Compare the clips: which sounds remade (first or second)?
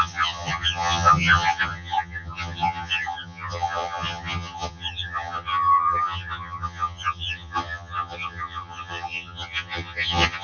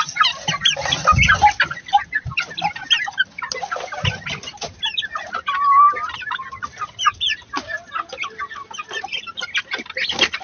first